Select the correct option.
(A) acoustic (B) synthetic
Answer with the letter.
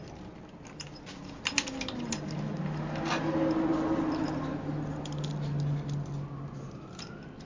A